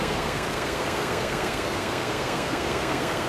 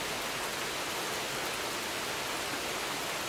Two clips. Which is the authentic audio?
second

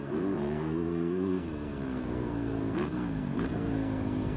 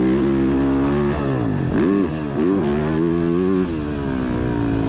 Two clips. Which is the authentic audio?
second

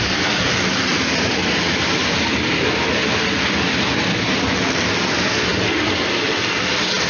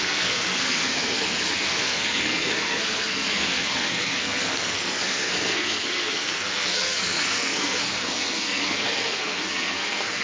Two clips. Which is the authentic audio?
first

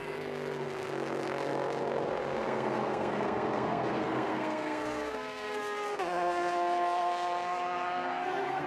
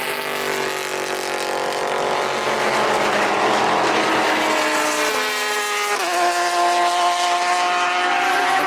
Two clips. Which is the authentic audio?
second